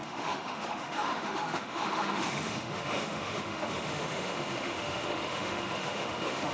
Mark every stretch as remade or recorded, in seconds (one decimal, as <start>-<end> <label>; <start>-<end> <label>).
0.0-6.5 remade